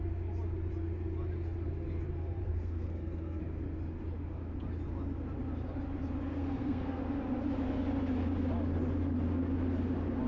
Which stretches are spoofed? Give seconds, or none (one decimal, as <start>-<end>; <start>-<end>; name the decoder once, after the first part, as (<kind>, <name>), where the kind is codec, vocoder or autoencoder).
2.4-3.4 (codec, SNAC); 6.3-7.0